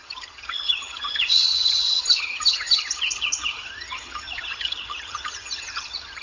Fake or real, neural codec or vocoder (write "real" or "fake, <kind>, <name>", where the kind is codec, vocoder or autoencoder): fake, vocoder, HiFi-GAN